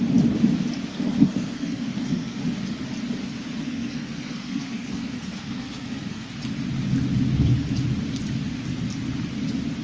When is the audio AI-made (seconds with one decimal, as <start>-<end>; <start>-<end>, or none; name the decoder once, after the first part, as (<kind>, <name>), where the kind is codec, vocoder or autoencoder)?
0.9-2.4 (codec, SNAC); 3.6-6.3